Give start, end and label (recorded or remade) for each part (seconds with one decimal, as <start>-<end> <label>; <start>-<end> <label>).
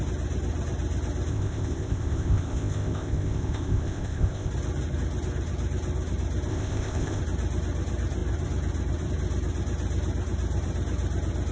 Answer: 0.0-1.3 recorded; 1.3-4.5 remade; 4.5-6.5 recorded; 6.5-7.2 remade; 7.2-11.5 recorded